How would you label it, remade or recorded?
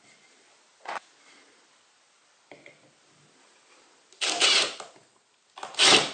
recorded